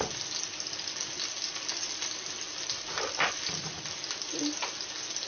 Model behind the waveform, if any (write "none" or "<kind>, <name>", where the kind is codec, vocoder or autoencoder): none